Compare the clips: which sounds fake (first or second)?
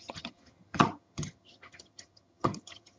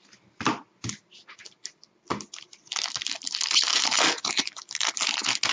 first